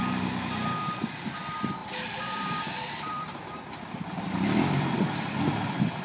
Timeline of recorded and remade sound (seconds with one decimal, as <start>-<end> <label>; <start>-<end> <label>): 0.0-1.8 recorded; 1.8-5.4 remade; 5.4-6.0 recorded